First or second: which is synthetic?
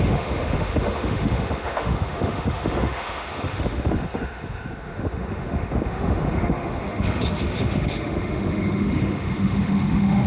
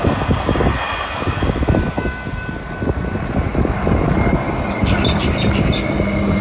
first